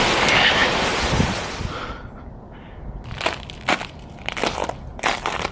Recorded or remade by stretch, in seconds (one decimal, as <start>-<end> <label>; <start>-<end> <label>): 0.0-5.5 recorded

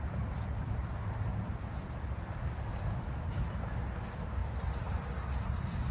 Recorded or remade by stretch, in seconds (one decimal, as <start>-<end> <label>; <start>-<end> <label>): 0.0-2.7 remade; 2.7-4.0 recorded; 4.0-4.4 remade; 4.4-5.3 recorded; 5.3-5.9 remade

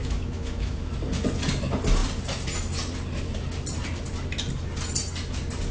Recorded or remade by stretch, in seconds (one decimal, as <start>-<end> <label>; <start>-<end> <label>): 0.0-0.9 remade; 0.9-5.7 recorded